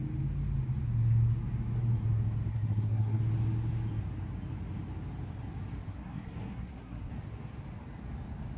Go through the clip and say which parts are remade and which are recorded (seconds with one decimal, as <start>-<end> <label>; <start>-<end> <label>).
0.0-2.5 recorded; 2.5-3.2 remade; 3.2-5.9 recorded; 5.9-7.1 remade; 7.1-8.6 recorded